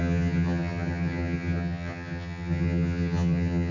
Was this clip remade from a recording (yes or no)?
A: yes